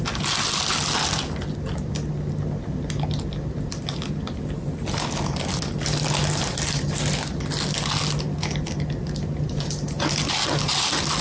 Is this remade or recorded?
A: recorded